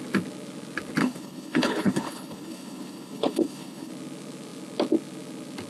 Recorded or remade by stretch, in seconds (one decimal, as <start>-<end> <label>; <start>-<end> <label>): 0.0-1.0 recorded; 1.0-3.9 remade; 3.9-5.7 recorded

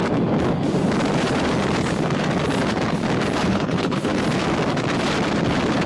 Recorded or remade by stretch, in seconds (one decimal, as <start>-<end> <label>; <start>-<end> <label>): 0.0-3.5 recorded; 3.5-4.1 remade; 4.1-5.9 recorded

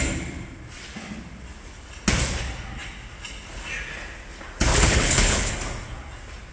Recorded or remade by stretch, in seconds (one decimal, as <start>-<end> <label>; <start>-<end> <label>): 0.0-4.7 recorded; 4.7-5.5 remade; 5.5-6.5 recorded

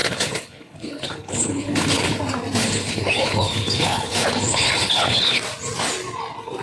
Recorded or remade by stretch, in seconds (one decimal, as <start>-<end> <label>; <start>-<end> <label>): 0.0-2.2 remade; 2.2-2.6 recorded; 2.6-5.4 remade; 5.4-6.6 recorded